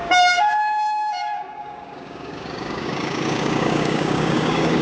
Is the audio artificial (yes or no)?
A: yes